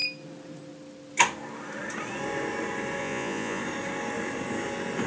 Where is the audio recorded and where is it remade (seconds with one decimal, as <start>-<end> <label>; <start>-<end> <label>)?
0.0-3.0 recorded; 3.0-3.6 remade; 3.6-5.1 recorded